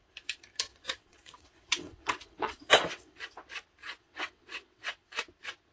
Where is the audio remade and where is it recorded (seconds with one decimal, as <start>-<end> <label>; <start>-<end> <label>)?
0.0-0.7 recorded; 0.7-3.2 remade; 3.2-3.8 recorded; 3.8-5.1 remade; 5.1-5.7 recorded